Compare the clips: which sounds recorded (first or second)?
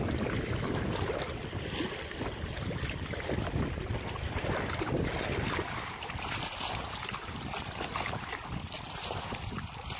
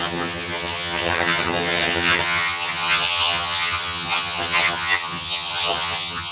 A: first